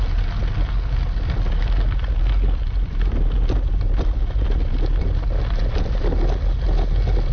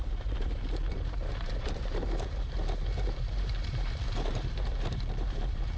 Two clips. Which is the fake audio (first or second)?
second